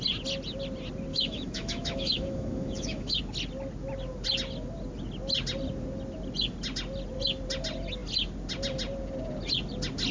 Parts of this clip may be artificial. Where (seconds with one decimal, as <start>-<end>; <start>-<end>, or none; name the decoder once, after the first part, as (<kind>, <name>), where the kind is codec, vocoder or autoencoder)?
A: 1.1-3.2 (autoencoder, DAC-VAE)